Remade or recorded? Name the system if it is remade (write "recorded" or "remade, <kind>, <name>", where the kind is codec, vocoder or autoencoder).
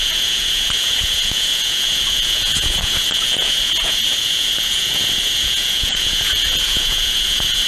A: remade, vocoder, Vocos